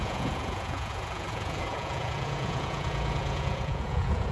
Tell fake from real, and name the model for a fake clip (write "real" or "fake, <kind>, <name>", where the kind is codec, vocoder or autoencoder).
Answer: fake, vocoder, Vocos